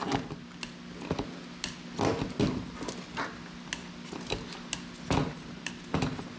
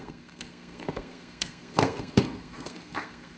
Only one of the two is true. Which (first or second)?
first